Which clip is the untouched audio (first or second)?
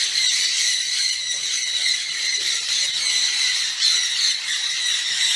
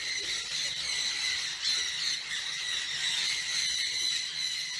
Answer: second